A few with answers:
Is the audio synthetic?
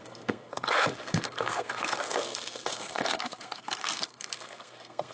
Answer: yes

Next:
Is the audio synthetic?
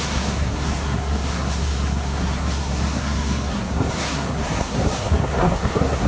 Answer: yes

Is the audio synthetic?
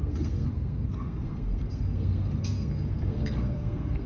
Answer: yes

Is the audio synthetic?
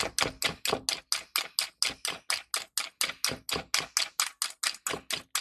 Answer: no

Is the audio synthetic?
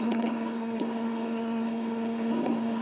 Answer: yes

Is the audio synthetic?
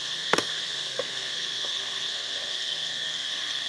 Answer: yes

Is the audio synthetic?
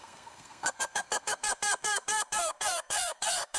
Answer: yes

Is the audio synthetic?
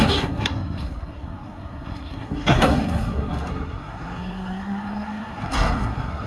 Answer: yes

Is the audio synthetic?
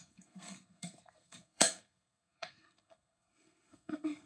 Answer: yes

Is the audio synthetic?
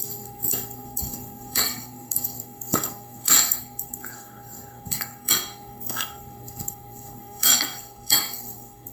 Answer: yes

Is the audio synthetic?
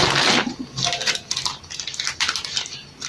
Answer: no